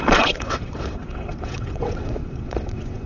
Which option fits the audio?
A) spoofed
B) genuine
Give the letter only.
A